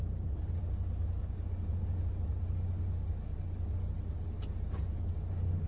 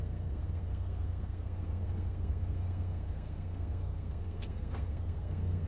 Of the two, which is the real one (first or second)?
first